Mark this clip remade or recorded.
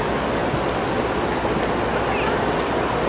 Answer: recorded